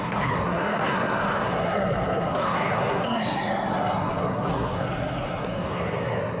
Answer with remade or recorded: remade